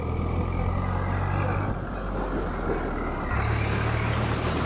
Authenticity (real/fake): real